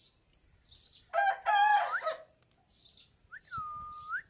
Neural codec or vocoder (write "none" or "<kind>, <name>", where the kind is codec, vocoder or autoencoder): none